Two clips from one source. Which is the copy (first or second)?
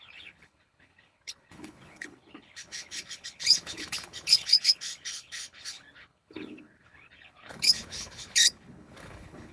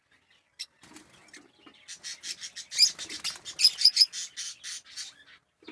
first